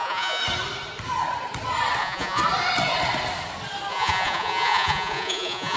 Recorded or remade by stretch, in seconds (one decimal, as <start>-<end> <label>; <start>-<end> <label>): 0.0-0.4 remade; 0.4-2.0 recorded; 2.0-2.4 remade; 2.4-3.9 recorded; 3.9-5.8 remade